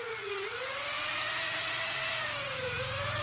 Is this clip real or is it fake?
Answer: fake